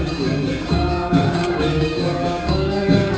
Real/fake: fake